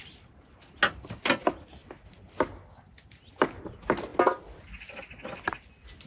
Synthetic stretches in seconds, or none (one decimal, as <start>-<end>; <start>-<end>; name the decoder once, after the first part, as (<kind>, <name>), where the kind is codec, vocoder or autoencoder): none

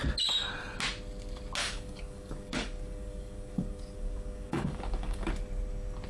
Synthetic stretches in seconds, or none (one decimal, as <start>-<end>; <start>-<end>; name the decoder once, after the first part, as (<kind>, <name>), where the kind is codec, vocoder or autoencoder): 1.6-5.3 (codec, DAC)

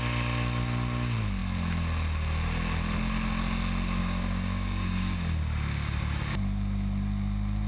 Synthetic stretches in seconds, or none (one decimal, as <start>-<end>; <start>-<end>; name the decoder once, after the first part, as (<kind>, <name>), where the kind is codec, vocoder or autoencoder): 4.0-6.4 (codec, DAC)

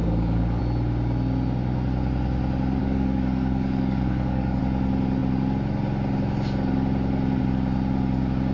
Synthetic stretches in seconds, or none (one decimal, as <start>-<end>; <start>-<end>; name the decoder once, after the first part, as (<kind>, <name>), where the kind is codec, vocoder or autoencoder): 0.0-0.6 (codec, DAC); 2.8-4.6

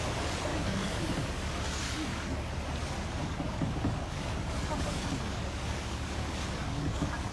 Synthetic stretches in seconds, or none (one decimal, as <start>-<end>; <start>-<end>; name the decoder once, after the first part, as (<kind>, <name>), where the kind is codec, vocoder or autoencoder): 0.5-2.5 (codec, DAC); 3.2-7.3

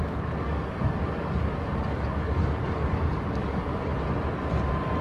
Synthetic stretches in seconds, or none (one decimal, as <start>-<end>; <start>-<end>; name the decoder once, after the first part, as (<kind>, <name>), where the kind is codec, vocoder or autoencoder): 0.0-3.9 (codec, DAC)

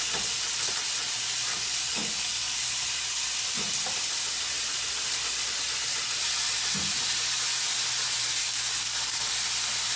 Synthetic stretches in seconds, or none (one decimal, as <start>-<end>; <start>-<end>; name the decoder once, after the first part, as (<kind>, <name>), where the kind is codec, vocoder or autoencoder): 1.5-2.7 (codec, DAC); 8.4-9.3

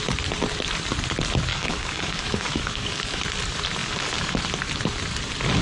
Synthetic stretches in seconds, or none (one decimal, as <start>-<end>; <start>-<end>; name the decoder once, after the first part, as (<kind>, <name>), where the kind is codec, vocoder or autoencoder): 1.5-3.2 (codec, DAC); 3.8-4.4